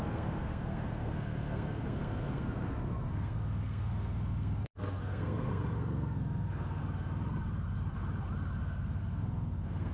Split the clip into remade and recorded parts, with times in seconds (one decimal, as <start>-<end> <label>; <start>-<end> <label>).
0.0-6.8 remade; 6.8-8.6 recorded; 8.6-9.9 remade